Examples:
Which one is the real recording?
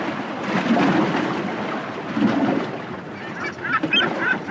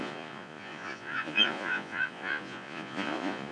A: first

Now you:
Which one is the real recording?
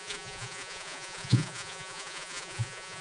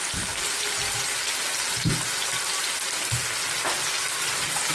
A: second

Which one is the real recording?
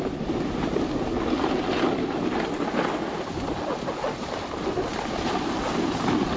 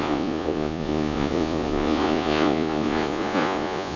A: first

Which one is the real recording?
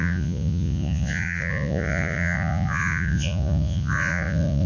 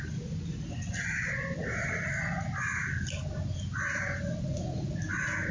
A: second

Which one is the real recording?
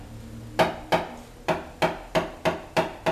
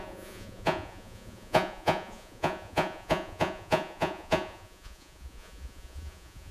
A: first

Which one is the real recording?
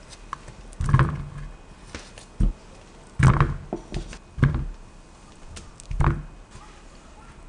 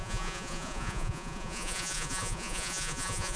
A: first